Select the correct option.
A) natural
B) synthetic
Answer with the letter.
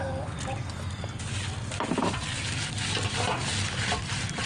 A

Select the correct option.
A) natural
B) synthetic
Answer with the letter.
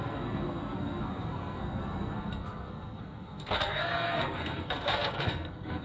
B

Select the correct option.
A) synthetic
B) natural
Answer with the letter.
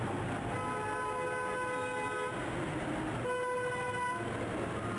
B